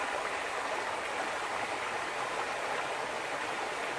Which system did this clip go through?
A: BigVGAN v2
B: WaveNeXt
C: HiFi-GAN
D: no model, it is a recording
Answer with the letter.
D